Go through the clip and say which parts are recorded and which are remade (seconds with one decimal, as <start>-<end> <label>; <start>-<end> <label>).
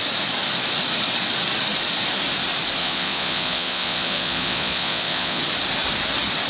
0.0-2.8 recorded; 2.8-5.4 remade; 5.4-6.5 recorded